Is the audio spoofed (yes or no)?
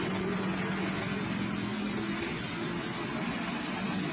no